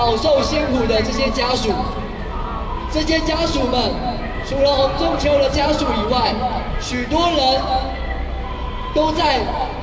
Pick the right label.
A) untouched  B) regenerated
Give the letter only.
A